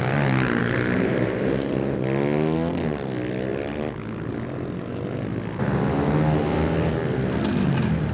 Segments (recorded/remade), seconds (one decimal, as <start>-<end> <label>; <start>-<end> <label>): 0.0-0.6 recorded; 0.6-1.7 remade; 1.7-8.1 recorded